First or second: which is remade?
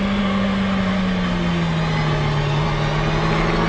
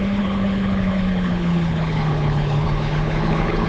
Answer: second